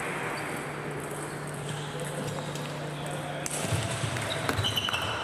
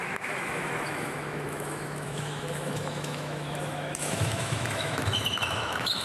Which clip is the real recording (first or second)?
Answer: first